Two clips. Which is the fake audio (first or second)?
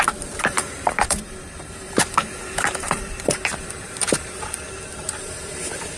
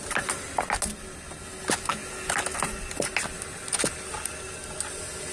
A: first